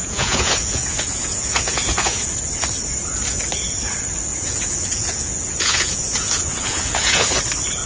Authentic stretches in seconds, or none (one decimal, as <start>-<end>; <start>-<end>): 2.3-4.3; 7.4-7.9